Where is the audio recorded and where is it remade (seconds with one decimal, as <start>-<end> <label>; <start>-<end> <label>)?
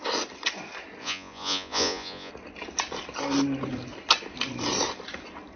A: 0.0-1.0 recorded; 1.0-2.3 remade; 2.3-5.6 recorded